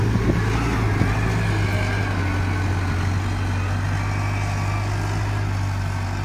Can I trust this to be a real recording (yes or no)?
yes